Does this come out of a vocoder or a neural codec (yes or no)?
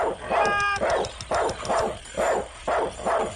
no